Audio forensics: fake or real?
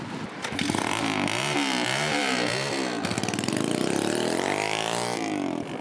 fake